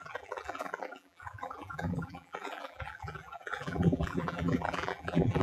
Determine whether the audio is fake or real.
fake